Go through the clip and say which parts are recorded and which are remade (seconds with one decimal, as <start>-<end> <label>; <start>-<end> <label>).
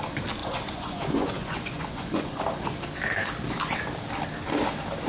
0.0-0.4 recorded; 0.4-2.4 remade; 2.4-5.1 recorded